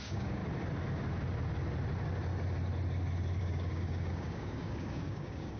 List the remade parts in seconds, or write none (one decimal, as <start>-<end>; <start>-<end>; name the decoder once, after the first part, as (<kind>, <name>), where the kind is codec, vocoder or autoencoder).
0.0-0.4 (codec, DAC); 3.4-5.6